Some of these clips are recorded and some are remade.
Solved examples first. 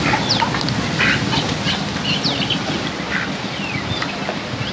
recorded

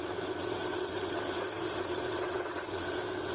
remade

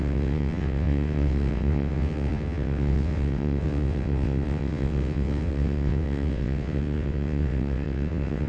remade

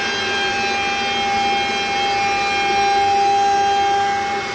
recorded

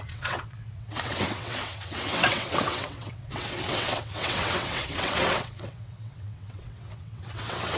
remade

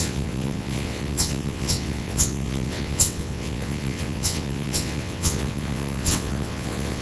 remade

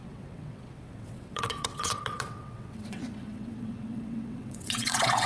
remade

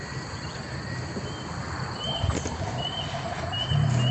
recorded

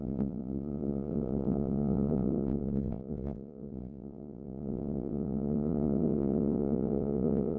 remade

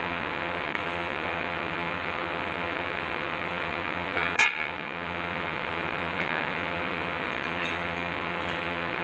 remade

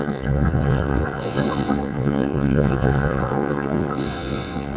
remade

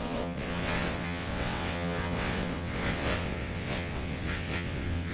remade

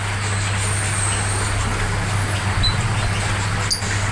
recorded